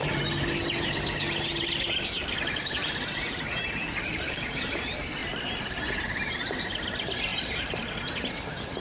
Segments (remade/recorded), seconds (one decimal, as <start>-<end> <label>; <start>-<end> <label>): 0.0-2.8 recorded; 2.8-4.4 remade; 4.4-8.8 recorded

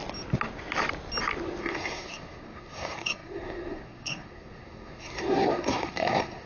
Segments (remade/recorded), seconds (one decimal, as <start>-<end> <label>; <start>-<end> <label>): 0.0-1.6 recorded; 1.6-6.5 remade

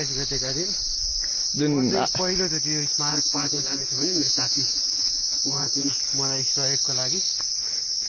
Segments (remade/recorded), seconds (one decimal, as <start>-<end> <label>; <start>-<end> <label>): 0.0-3.1 recorded; 3.1-6.0 remade; 6.0-8.1 recorded

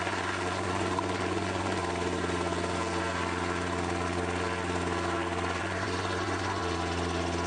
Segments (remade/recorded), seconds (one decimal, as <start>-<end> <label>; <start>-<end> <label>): 0.0-1.8 remade; 1.8-5.6 recorded; 5.6-6.6 remade; 6.6-7.5 recorded

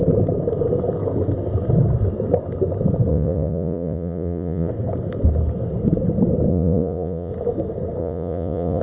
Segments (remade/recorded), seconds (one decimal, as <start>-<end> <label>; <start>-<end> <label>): 0.0-3.1 recorded; 3.1-4.7 remade; 4.7-6.5 recorded; 6.5-7.3 remade; 7.3-8.0 recorded; 8.0-8.8 remade

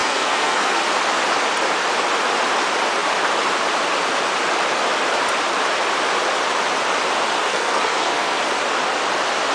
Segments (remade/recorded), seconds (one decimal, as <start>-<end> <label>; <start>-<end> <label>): 0.0-0.8 remade; 0.8-7.5 recorded; 7.5-8.4 remade; 8.4-9.5 recorded